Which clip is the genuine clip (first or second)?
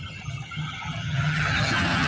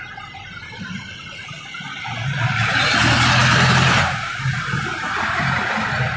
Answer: second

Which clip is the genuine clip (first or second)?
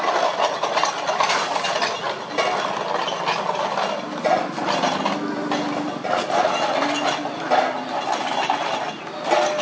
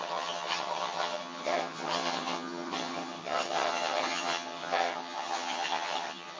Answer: first